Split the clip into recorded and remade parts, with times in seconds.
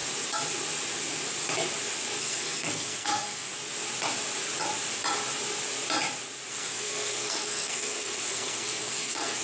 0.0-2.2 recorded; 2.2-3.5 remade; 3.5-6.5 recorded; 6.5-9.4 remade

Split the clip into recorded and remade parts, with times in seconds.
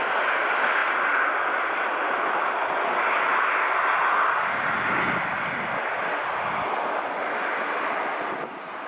0.0-8.9 recorded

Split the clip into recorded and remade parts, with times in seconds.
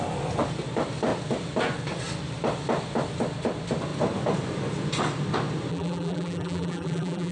0.0-5.7 recorded; 5.7-7.3 remade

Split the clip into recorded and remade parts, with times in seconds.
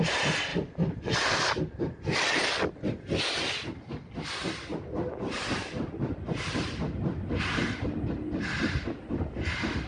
0.0-0.5 recorded; 0.5-1.5 remade; 1.5-9.9 recorded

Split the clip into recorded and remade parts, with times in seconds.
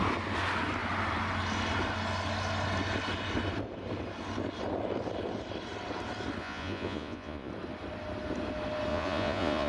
0.0-6.4 recorded; 6.4-7.5 remade; 7.5-8.9 recorded; 8.9-9.7 remade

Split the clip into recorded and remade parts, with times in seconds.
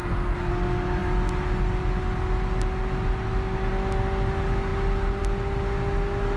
0.0-0.5 remade; 0.5-6.4 recorded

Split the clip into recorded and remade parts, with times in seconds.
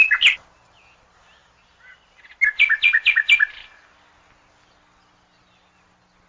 0.0-6.3 recorded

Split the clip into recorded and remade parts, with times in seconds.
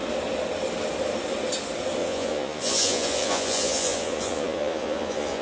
0.0-2.0 recorded; 2.0-5.4 remade